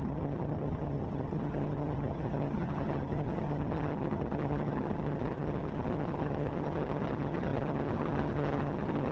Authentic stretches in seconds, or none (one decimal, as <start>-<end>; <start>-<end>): none